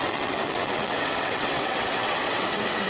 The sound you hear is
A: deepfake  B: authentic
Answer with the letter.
A